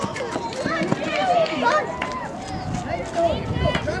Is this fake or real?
real